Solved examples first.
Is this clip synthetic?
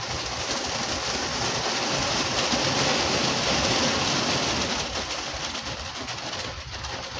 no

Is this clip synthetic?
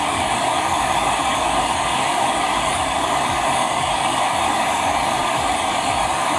yes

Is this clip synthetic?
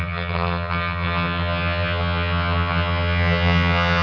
yes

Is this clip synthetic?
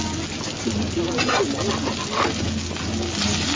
no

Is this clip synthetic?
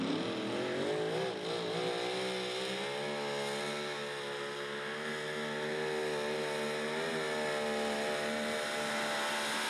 no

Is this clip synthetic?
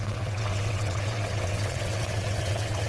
yes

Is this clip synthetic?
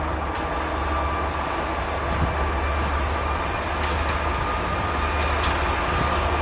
no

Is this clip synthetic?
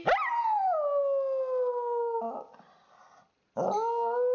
no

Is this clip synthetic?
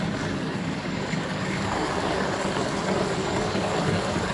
yes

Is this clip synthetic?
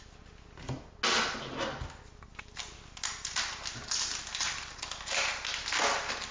no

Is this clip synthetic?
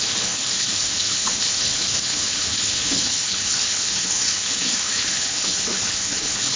yes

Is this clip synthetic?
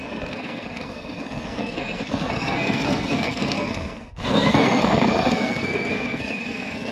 yes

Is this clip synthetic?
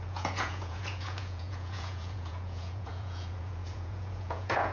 yes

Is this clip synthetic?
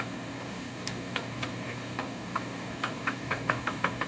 yes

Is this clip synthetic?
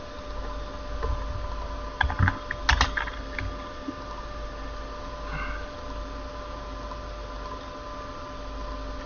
no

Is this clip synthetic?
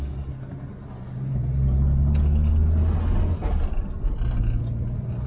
no